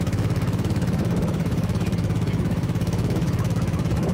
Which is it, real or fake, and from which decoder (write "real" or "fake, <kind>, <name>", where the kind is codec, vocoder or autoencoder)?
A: fake, autoencoder, DAC-VAE